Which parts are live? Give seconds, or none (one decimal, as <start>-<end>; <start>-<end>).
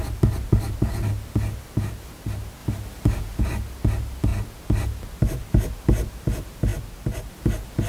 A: 0.0-7.9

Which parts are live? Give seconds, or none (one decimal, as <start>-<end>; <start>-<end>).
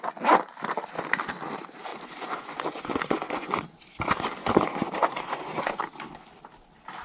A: 0.0-1.9; 3.5-4.4; 5.8-7.0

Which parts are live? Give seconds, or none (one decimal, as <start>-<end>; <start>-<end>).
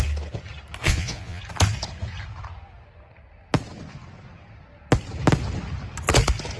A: 0.0-0.8; 1.4-6.6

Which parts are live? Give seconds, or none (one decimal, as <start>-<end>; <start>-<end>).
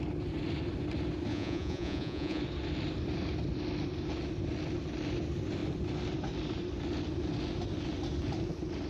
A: 0.0-1.3; 2.4-8.9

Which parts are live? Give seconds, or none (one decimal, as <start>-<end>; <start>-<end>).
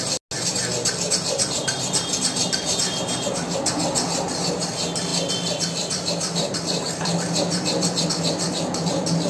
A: 0.0-9.3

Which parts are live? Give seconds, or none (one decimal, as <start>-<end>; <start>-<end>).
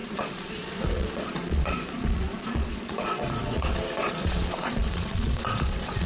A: none